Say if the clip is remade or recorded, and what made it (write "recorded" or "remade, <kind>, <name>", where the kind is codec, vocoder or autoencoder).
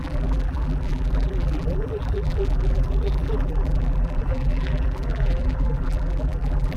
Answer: remade, vocoder, BigVGAN v2